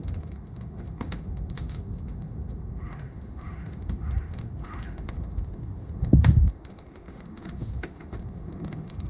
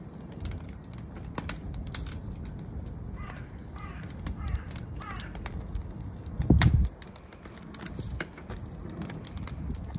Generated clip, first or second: first